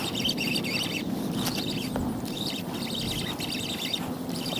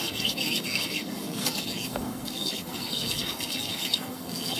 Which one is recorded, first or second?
first